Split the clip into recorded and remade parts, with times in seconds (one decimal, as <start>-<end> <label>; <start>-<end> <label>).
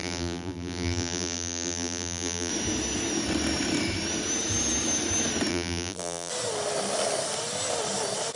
0.0-2.5 remade; 2.5-5.5 recorded; 5.5-6.3 remade; 6.3-8.3 recorded